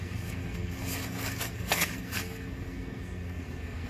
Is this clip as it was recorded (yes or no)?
no